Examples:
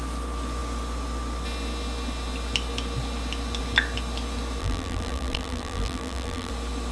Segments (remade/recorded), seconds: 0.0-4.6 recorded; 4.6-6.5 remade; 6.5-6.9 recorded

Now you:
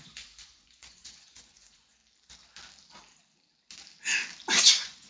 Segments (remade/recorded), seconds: 0.0-2.0 remade; 2.0-4.6 recorded; 4.6-5.1 remade

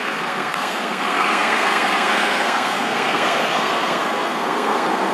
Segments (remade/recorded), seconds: 0.0-5.1 remade